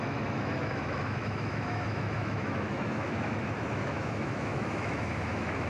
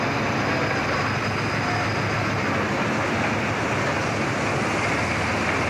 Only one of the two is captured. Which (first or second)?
second